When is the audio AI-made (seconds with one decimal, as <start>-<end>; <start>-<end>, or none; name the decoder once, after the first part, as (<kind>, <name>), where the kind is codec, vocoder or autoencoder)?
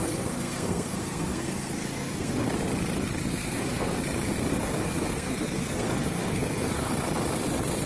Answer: 0.0-2.5 (codec, SNAC); 3.3-4.0; 4.5-6.9